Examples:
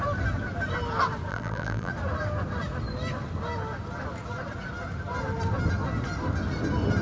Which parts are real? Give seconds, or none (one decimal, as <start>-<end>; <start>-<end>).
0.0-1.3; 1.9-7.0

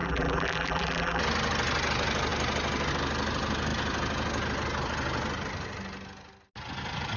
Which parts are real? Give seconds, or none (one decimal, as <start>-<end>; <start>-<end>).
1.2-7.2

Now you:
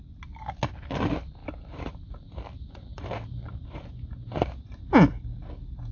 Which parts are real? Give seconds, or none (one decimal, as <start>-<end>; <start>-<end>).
0.0-1.4; 4.9-5.9